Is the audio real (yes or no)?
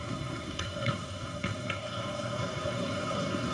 no